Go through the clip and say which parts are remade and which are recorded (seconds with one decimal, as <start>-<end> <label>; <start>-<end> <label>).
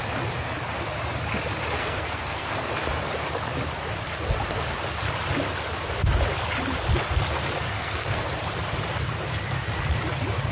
0.0-1.8 recorded; 1.8-2.7 remade; 2.7-7.7 recorded; 7.7-8.3 remade; 8.3-10.5 recorded